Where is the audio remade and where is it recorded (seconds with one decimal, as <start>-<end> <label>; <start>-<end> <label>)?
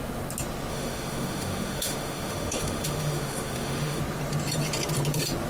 0.0-0.7 recorded; 0.7-4.0 remade; 4.0-5.5 recorded